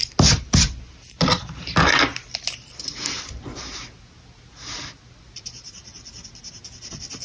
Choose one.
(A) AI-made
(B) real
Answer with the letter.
B